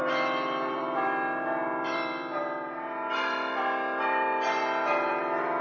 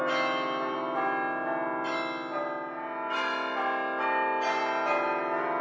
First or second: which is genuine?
second